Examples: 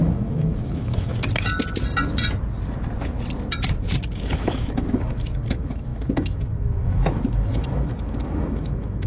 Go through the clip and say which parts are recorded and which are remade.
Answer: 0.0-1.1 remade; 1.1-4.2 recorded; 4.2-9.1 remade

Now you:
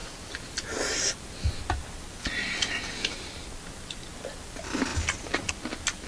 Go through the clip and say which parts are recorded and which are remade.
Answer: 0.0-6.1 recorded

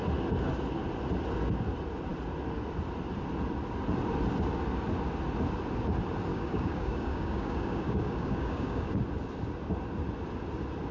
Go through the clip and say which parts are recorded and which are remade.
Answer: 0.0-6.3 recorded; 6.3-8.9 remade; 8.9-10.9 recorded

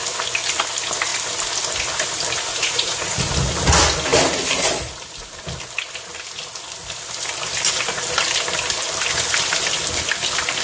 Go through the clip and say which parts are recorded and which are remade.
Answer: 0.0-2.5 recorded; 2.5-3.3 remade; 3.3-10.6 recorded